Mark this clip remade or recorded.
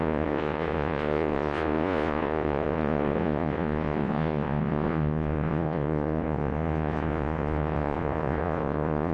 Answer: remade